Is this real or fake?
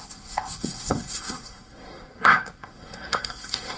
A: fake